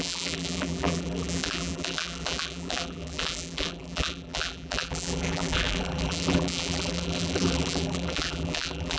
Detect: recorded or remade remade